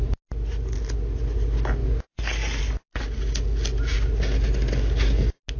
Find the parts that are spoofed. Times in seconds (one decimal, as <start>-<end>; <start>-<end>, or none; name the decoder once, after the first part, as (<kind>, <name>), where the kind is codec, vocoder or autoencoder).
none